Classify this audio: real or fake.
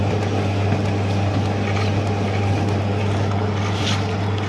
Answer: real